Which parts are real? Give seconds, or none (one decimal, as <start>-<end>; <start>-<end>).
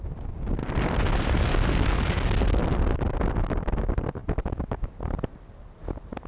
0.0-4.2; 4.9-6.3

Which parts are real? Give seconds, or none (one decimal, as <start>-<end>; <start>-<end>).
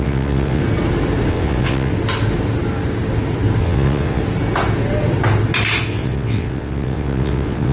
0.6-1.3; 1.9-3.6; 4.2-5.9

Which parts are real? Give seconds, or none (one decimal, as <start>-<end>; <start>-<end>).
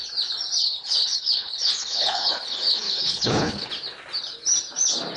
0.0-0.6; 3.7-5.2